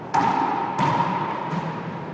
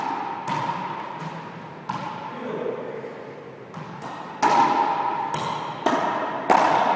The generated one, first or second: first